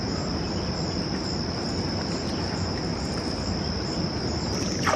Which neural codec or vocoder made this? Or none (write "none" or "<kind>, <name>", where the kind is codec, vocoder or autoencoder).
none